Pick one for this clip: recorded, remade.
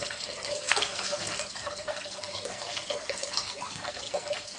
remade